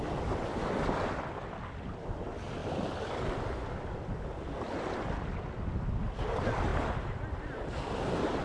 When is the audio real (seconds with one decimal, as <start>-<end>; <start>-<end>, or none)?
0.0-8.4